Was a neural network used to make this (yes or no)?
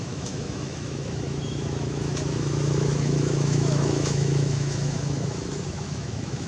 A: yes